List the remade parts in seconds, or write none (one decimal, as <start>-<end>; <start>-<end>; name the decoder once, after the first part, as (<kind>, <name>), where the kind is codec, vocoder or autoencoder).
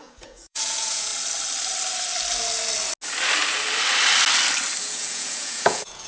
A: 0.0-1.1 (vocoder, Vocos); 4.8-6.1